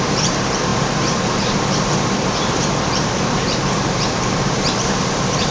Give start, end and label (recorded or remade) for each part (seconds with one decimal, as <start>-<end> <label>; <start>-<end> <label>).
0.0-5.5 remade

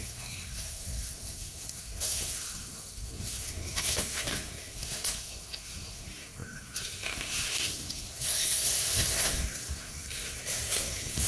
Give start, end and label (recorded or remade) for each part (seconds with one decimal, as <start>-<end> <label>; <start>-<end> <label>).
0.0-11.3 remade

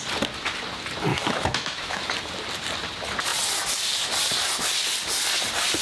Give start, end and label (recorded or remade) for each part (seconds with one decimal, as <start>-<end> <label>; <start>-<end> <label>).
0.0-1.1 recorded; 1.1-2.0 remade; 2.0-5.8 recorded